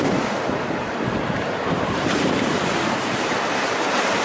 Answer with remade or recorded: remade